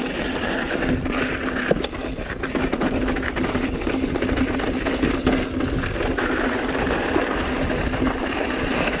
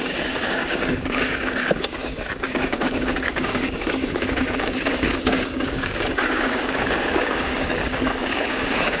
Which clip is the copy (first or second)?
second